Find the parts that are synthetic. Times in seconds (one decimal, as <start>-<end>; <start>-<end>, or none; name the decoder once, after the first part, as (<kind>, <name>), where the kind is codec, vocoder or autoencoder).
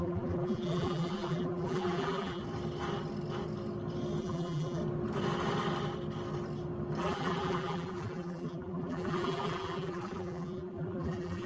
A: 0.0-2.4 (vocoder, BigVGAN v2); 4.2-4.8; 7.0-11.5